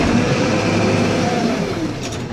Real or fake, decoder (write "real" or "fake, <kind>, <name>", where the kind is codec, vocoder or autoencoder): fake, vocoder, BigVGAN v2